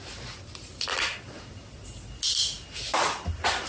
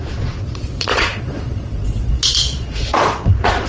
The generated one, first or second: second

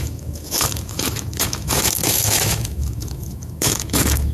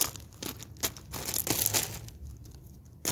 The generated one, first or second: first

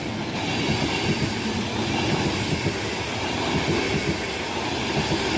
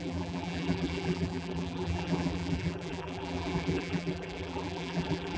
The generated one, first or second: second